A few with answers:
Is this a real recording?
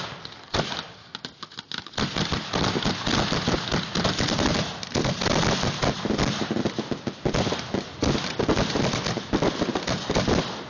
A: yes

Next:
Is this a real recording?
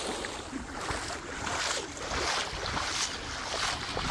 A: yes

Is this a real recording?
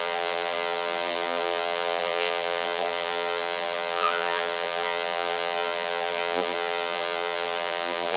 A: no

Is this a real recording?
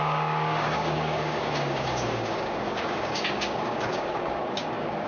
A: no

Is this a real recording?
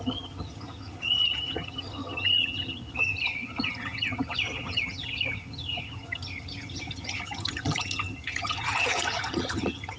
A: no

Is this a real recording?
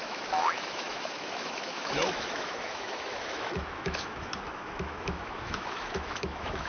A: no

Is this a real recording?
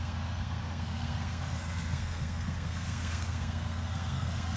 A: no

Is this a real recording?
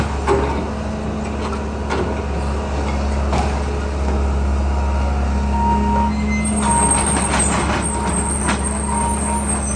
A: yes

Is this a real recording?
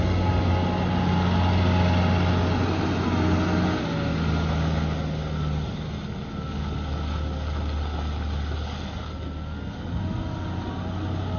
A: yes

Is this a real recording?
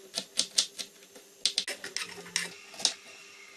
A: yes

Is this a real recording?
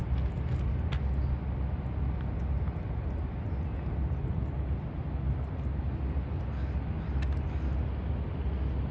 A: yes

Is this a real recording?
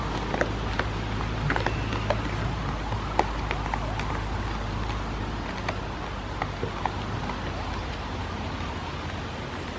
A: yes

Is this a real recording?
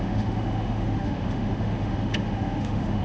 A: no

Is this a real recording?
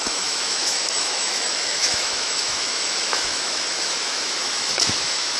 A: no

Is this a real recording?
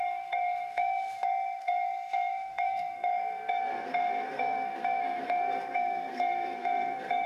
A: no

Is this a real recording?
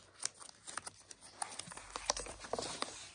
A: yes